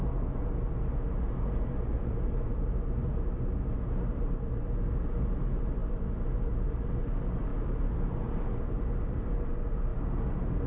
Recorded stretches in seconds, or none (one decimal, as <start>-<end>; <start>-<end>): 0.0-7.5; 8.4-10.7